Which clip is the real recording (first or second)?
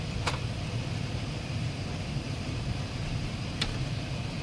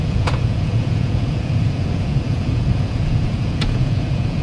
first